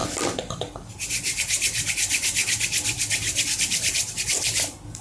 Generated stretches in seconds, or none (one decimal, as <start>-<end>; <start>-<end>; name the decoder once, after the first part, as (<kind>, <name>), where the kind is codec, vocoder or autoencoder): none

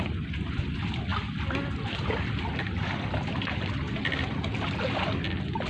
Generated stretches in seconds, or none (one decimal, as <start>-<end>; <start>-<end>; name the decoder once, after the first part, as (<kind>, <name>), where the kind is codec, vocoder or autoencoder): none

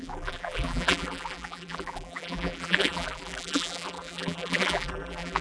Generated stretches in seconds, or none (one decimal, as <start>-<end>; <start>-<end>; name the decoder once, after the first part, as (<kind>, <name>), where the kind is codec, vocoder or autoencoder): 0.0-5.4 (vocoder, BigVGAN v2)

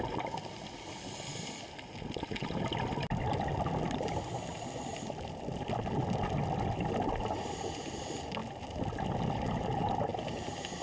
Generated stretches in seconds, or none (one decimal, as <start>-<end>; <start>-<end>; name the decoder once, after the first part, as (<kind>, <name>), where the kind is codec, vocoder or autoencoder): 0.0-8.4 (vocoder, BigVGAN v2); 9.2-10.8

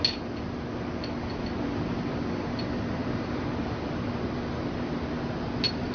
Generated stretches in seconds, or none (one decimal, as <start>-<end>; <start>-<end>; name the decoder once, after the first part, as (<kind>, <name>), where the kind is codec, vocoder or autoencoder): 3.0-3.9 (vocoder, BigVGAN v2)

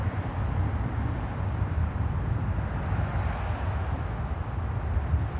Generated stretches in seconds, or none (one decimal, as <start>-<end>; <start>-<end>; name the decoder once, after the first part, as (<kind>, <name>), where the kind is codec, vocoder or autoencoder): none

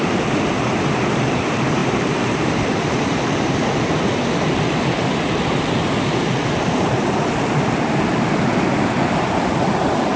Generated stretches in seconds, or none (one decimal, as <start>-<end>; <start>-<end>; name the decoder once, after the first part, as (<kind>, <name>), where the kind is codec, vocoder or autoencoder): 1.8-3.6 (vocoder, BigVGAN v2)